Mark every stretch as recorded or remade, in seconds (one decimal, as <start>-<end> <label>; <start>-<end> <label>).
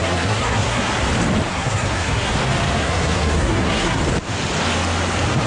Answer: 0.0-1.0 remade; 1.0-1.5 recorded; 1.5-2.3 remade; 2.3-2.8 recorded; 2.8-4.0 remade; 4.0-5.5 recorded